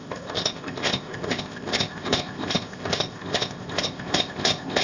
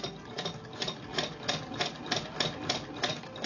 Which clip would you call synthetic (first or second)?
first